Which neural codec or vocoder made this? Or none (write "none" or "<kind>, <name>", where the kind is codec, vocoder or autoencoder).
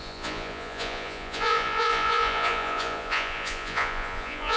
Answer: vocoder, Vocos